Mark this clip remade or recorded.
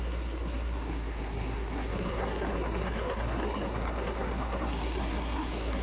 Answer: remade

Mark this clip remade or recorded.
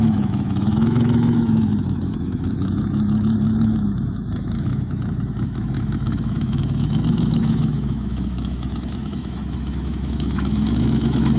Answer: remade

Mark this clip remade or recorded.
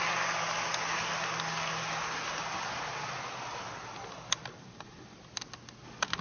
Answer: recorded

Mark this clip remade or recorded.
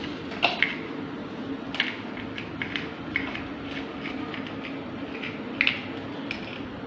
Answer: recorded